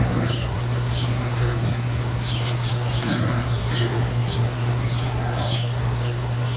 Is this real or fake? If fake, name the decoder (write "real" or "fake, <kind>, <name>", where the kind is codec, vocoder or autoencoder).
fake, codec, SNAC